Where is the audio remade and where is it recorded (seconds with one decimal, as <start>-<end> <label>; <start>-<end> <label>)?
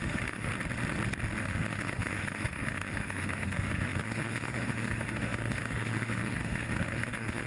0.0-0.5 remade; 0.5-1.4 recorded; 1.4-7.5 remade